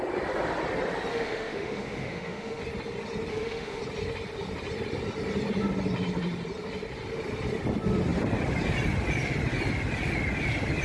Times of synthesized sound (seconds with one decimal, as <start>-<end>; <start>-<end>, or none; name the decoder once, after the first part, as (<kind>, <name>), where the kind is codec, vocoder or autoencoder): 1.1-2.6 (autoencoder, DAC-VAE); 3.3-3.8